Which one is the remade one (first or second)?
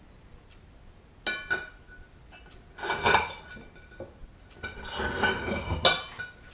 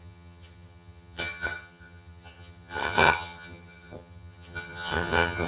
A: second